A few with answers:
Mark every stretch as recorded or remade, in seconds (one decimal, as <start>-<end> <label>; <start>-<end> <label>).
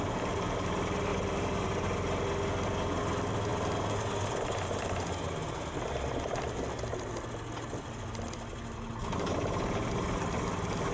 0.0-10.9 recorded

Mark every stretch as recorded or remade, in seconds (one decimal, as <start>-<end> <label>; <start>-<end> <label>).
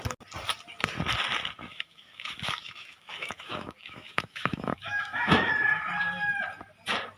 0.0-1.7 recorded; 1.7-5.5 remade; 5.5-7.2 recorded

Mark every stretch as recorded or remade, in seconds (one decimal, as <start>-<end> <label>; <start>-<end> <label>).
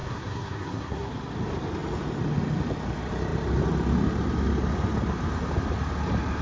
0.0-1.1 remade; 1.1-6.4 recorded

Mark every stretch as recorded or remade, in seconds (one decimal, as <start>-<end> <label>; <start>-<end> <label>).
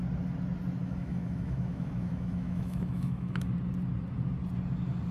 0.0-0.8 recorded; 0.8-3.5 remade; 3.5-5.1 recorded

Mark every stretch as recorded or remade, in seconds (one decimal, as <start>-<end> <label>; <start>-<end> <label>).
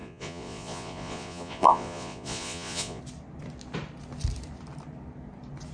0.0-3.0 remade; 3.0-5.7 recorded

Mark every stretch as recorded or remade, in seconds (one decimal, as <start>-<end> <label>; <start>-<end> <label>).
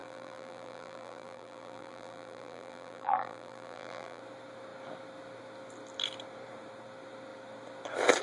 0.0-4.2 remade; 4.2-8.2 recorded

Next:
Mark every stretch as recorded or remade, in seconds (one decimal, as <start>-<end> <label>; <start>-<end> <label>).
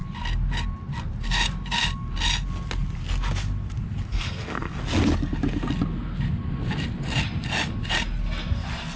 0.0-4.1 recorded; 4.1-4.8 remade; 4.8-9.0 recorded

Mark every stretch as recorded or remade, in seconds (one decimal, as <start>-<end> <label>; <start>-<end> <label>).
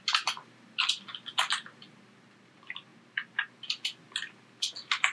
0.0-5.1 recorded